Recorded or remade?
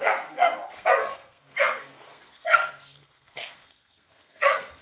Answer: remade